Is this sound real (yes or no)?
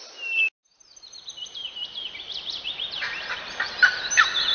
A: yes